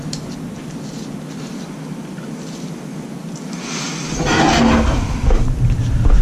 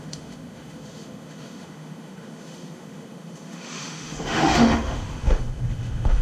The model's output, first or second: second